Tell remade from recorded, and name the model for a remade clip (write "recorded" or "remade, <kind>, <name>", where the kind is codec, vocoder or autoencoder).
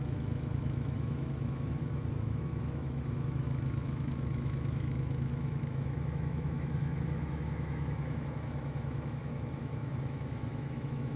remade, autoencoder, DAC-VAE